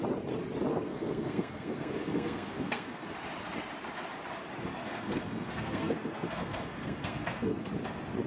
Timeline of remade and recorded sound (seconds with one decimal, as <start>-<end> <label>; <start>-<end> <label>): 0.0-0.7 recorded; 0.7-3.1 remade; 3.1-4.8 recorded; 4.8-7.7 remade; 7.7-8.3 recorded